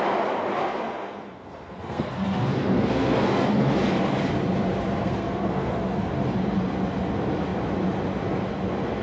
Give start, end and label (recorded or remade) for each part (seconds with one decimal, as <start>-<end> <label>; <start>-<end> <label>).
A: 0.0-0.6 recorded; 0.6-3.7 remade; 3.7-5.0 recorded; 5.0-6.1 remade; 6.1-9.0 recorded

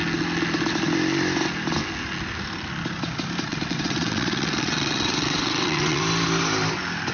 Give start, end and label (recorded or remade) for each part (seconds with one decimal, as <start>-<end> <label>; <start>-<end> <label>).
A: 0.0-3.5 recorded; 3.5-6.0 remade; 6.0-7.1 recorded

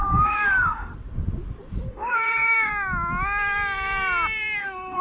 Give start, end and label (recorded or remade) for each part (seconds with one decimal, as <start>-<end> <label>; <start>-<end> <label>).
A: 0.0-0.9 remade; 0.9-1.9 recorded; 1.9-2.7 remade; 2.7-4.6 recorded; 4.6-5.0 remade

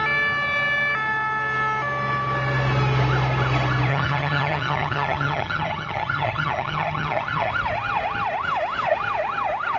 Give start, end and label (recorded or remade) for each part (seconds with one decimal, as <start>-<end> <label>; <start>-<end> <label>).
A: 0.0-3.9 recorded; 3.9-7.5 remade; 7.5-9.8 recorded